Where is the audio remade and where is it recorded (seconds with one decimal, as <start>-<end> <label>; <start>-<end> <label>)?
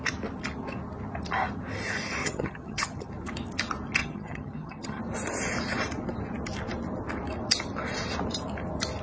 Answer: 0.0-2.2 recorded; 2.2-3.1 remade; 3.1-4.0 recorded; 4.0-5.0 remade; 5.0-9.0 recorded